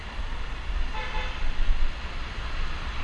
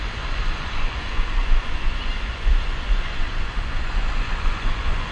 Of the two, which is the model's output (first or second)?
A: second